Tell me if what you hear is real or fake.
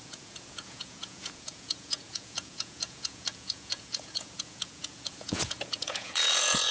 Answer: fake